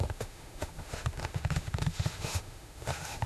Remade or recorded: remade